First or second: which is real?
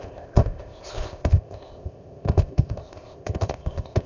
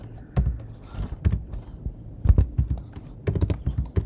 second